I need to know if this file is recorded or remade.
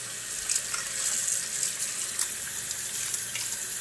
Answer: recorded